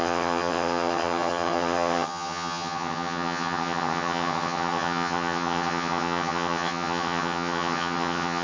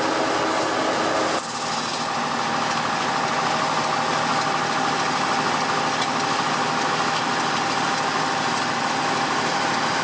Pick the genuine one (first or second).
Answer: second